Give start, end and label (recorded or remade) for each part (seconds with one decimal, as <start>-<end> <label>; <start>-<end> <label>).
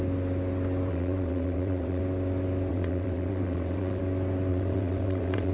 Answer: 0.0-0.9 recorded; 0.9-2.0 remade; 2.0-2.7 recorded; 2.7-4.0 remade; 4.0-4.5 recorded; 4.5-5.5 remade